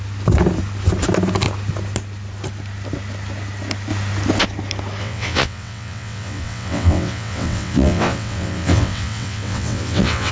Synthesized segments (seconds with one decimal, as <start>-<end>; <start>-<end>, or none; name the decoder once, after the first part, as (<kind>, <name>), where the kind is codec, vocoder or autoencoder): 5.0-10.3 (vocoder, WaveNeXt)